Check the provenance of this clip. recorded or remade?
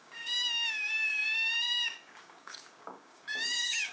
remade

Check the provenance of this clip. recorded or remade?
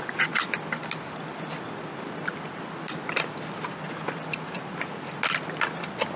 recorded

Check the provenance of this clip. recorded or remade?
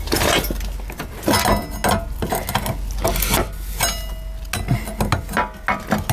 recorded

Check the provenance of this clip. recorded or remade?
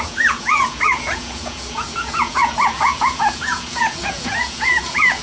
remade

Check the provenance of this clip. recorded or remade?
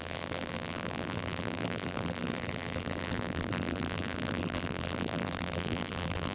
remade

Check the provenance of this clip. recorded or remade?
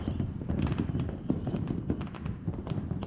remade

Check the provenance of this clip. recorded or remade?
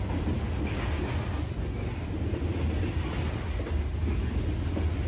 recorded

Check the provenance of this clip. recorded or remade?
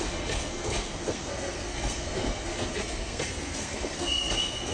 remade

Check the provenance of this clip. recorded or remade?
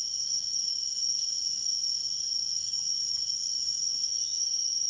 remade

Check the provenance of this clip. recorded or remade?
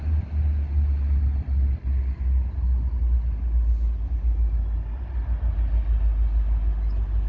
recorded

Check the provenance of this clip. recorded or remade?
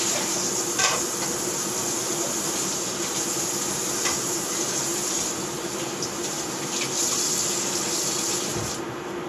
recorded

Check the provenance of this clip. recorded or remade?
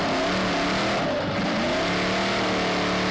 recorded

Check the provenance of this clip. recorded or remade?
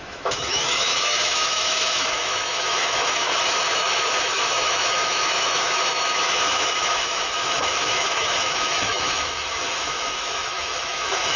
remade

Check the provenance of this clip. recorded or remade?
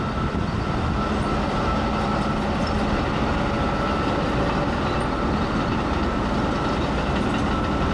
recorded